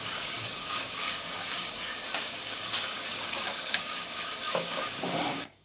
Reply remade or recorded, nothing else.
remade